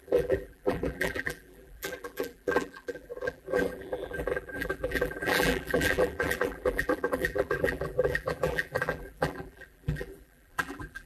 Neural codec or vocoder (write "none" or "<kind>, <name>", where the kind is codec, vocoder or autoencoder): vocoder, BigVGAN v2